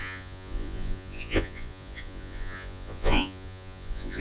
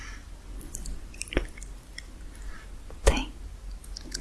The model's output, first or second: first